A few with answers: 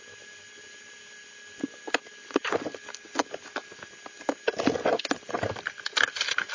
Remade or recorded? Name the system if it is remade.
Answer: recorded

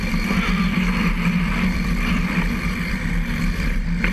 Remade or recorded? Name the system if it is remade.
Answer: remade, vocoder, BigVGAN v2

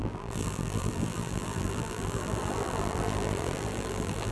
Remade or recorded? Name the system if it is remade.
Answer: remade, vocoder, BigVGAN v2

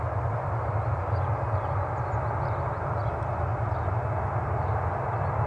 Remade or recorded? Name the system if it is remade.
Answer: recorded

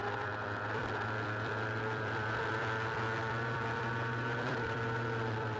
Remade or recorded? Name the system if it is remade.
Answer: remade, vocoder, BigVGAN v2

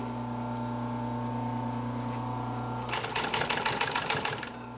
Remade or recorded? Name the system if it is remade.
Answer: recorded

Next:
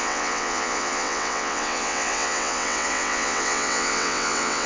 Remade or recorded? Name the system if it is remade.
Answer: remade, vocoder, WaveNeXt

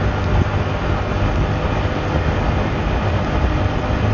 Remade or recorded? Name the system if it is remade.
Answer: recorded